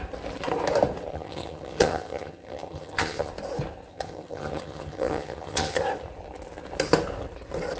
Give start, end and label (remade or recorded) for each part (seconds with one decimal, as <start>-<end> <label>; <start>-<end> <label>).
0.0-1.1 recorded; 1.1-3.3 remade; 3.3-3.9 recorded; 3.9-5.8 remade; 5.8-7.8 recorded